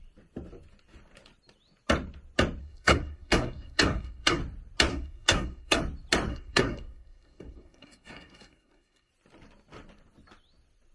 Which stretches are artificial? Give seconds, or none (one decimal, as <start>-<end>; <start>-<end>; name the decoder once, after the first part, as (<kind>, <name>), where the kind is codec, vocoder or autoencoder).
2.6-4.4 (codec, SNAC); 4.9-5.8; 6.3-9.1